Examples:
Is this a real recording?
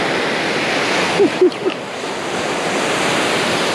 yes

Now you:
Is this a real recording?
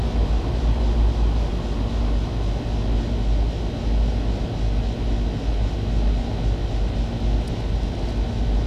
yes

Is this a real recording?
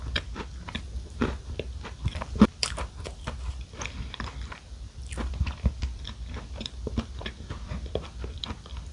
no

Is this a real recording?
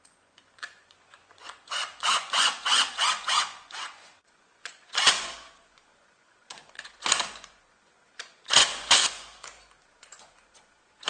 no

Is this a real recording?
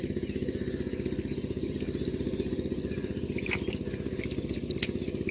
yes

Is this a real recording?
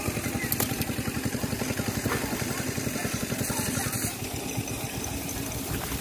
yes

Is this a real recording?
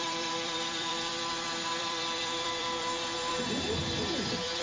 no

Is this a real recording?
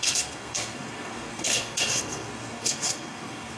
no